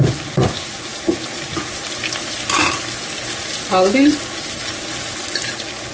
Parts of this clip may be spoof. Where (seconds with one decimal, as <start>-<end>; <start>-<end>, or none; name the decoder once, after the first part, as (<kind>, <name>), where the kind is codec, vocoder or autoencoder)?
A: none